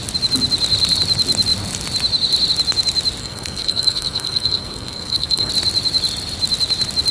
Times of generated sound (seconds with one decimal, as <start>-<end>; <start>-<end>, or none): 3.2-5.5

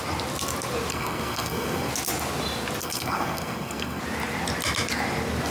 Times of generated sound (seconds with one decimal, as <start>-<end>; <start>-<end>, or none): 0.9-1.9; 2.8-4.0